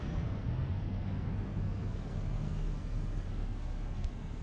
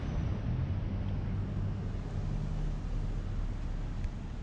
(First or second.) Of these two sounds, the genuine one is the second